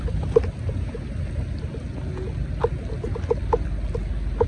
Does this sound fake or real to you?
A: real